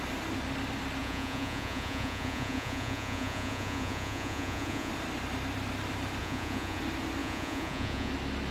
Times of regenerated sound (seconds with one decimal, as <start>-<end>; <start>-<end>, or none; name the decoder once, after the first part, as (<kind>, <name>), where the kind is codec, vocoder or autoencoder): 1.0-4.9 (vocoder, Vocos); 6.2-6.8; 7.2-8.1